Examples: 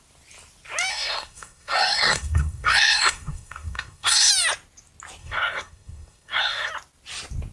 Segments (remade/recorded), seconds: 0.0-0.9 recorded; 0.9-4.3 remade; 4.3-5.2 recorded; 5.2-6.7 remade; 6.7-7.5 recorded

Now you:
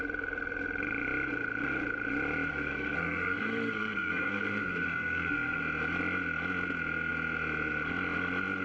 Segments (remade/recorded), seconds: 0.0-2.5 recorded; 2.5-5.6 remade; 5.6-8.6 recorded

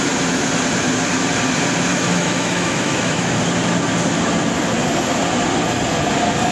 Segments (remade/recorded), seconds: 0.0-1.9 recorded; 1.9-3.3 remade; 3.3-6.5 recorded

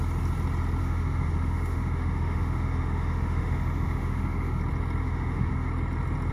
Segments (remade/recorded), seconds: 0.0-0.8 recorded; 0.8-4.6 remade; 4.6-5.0 recorded; 5.0-5.7 remade; 5.7-6.3 recorded

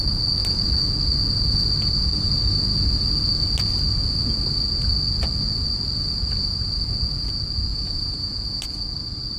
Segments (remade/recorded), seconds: 0.0-7.7 recorded; 7.7-8.6 remade; 8.6-9.4 recorded

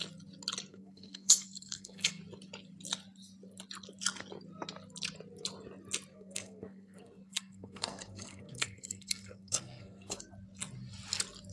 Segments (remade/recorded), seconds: 0.0-0.7 recorded; 0.7-2.2 remade; 2.2-6.1 recorded; 6.1-10.2 remade; 10.2-11.5 recorded

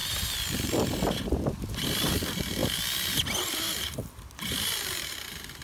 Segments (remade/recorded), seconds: 0.0-5.6 recorded

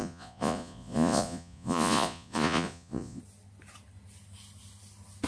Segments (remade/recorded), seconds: 0.0-3.2 remade; 3.2-5.3 recorded